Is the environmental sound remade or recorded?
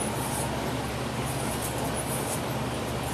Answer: recorded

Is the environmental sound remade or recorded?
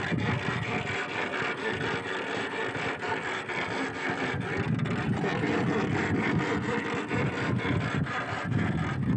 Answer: recorded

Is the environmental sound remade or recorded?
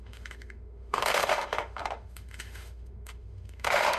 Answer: remade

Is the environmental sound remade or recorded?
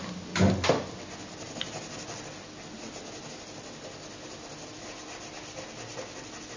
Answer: recorded